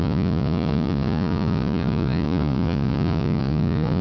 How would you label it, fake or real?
fake